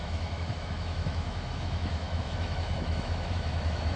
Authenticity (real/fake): fake